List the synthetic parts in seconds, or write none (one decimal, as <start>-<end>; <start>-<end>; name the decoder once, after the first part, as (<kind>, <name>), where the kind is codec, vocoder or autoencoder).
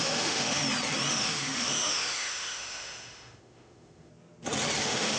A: 0.0-0.6 (autoencoder, DAC-VAE); 1.1-4.1; 4.8-5.2